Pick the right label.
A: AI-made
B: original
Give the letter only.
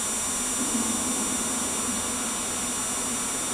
B